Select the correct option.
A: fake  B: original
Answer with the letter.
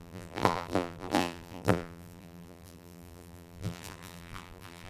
A